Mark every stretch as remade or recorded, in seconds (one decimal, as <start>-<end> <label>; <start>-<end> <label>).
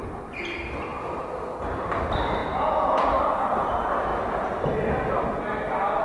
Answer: 0.0-2.4 recorded; 2.4-3.2 remade; 3.2-6.0 recorded